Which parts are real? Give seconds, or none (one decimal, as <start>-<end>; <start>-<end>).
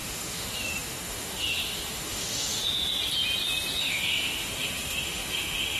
2.6-3.8